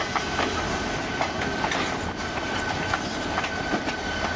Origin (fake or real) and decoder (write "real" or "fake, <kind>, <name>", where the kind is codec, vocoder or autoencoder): real